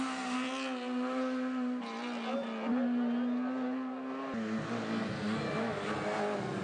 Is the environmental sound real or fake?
real